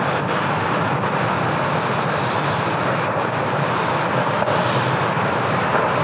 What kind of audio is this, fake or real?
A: fake